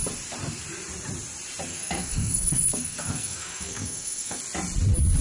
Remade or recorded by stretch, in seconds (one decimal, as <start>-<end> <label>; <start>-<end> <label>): 0.0-1.7 recorded; 1.7-4.4 remade; 4.4-5.2 recorded